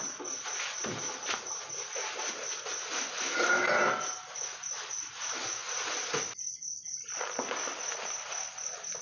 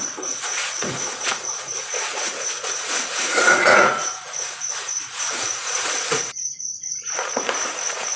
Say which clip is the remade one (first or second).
second